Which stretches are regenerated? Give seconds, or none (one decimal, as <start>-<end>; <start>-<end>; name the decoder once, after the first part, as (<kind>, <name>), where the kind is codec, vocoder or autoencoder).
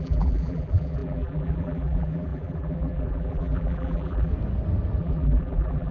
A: 0.0-4.3 (vocoder, BigVGAN v2); 5.0-5.9